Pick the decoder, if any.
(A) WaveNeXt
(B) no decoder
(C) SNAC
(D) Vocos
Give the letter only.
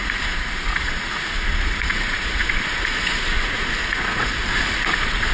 D